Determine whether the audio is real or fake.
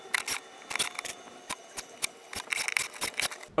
real